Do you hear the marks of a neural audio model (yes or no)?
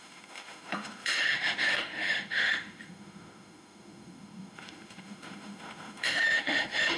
yes